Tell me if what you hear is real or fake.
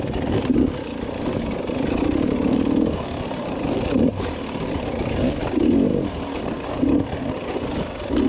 real